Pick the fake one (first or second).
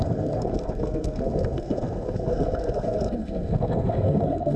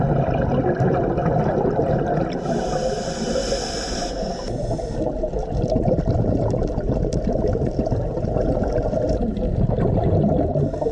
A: first